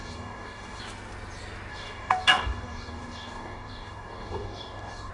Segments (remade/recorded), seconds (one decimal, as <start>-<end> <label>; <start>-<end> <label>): 0.0-0.8 remade; 0.8-1.7 recorded; 1.7-5.1 remade